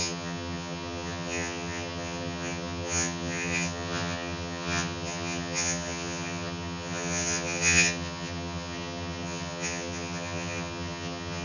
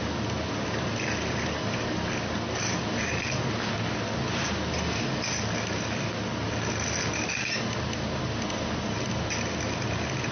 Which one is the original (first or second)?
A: second